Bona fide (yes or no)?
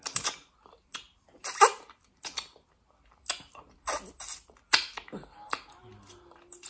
yes